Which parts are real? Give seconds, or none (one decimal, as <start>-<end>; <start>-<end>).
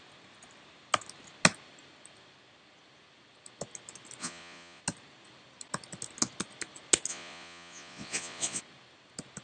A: 0.0-4.2; 4.8-7.1; 8.6-9.4